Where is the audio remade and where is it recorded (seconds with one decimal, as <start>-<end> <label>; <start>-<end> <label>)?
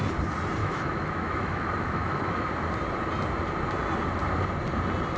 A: 0.0-0.6 recorded; 0.6-2.5 remade; 2.5-5.2 recorded